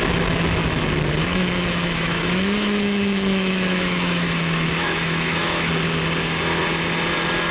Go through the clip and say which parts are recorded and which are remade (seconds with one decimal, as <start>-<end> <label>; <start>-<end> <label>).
0.0-1.2 recorded; 1.2-5.7 remade; 5.7-7.5 recorded